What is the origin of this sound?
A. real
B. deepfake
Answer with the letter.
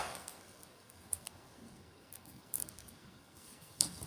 B